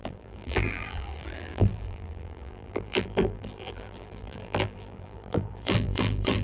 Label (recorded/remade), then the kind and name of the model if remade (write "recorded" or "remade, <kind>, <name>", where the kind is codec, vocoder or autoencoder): remade, vocoder, BigVGAN v2